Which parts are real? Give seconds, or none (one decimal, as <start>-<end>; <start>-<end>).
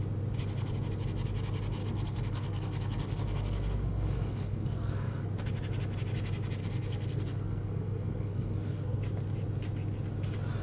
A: 0.0-1.8; 5.3-6.6; 9.0-10.6